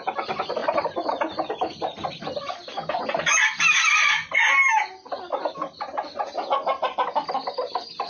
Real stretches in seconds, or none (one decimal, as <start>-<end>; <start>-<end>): 0.0-8.1